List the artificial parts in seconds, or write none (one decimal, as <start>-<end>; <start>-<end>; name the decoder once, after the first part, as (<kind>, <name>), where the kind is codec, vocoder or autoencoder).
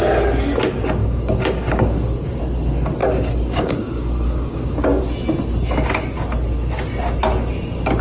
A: 1.0-2.4 (codec, DAC); 3.0-5.0